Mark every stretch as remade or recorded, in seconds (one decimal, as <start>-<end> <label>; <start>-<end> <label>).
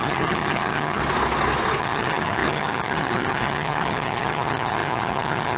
0.0-1.0 remade; 1.0-1.8 recorded; 1.8-5.6 remade